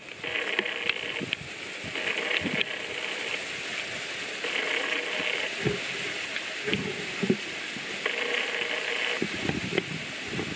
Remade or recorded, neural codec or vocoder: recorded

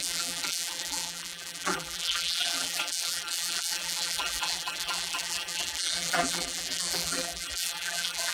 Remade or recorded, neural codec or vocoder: remade, vocoder, BigVGAN v2